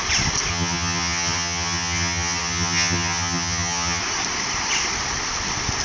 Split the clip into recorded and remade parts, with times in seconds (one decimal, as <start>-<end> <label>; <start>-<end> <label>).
0.0-0.5 recorded; 0.5-4.0 remade; 4.0-5.8 recorded